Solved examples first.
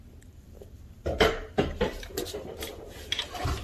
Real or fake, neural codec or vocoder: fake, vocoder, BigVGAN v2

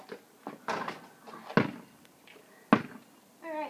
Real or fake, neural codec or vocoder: real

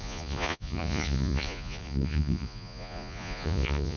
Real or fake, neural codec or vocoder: fake, vocoder, Vocos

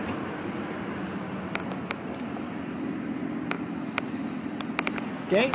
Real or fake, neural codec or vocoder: real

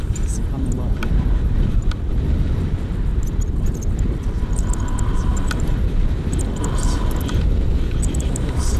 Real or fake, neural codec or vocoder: fake, vocoder, BigVGAN v2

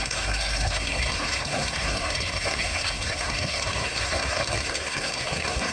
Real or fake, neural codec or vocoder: fake, codec, SNAC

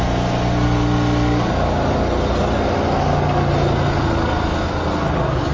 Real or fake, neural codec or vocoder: real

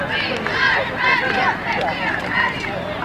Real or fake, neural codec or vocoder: real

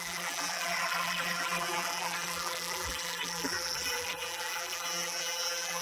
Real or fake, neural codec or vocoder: fake, vocoder, BigVGAN v2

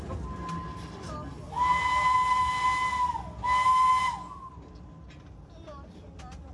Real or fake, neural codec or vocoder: real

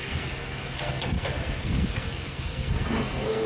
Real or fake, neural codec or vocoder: fake, codec, SNAC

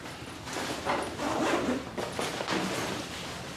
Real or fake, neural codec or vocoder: fake, vocoder, BigVGAN v2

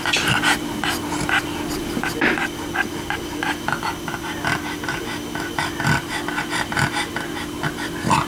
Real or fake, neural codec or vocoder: real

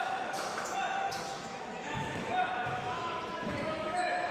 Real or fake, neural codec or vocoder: fake, autoencoder, DAC-VAE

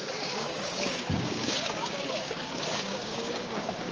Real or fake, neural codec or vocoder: fake, codec, DAC